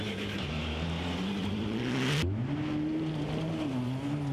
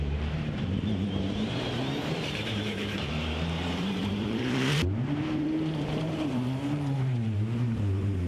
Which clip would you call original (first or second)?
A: first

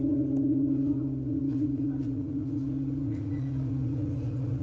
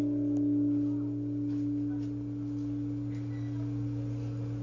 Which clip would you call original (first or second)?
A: second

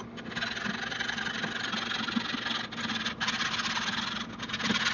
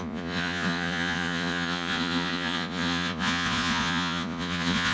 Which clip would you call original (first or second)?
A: first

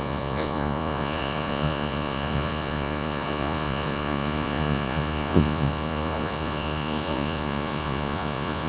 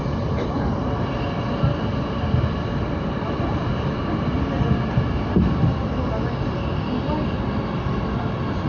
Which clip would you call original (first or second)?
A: second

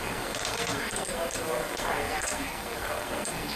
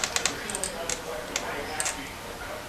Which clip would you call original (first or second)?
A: second